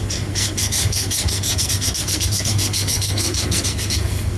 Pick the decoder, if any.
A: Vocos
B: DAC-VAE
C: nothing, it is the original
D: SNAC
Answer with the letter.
D